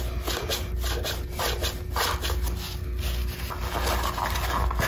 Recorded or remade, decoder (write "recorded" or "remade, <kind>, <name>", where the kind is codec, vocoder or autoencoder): recorded